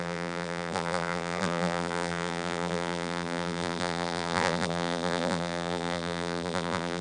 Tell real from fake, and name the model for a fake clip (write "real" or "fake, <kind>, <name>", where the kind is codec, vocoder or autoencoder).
fake, vocoder, BigVGAN v2